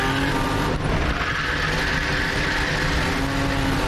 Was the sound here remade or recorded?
recorded